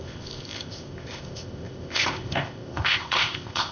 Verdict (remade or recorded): remade